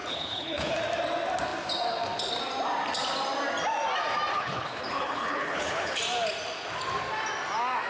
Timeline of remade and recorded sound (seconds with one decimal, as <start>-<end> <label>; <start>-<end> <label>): 0.0-0.8 remade; 0.8-4.3 recorded; 4.3-6.0 remade; 6.0-7.9 recorded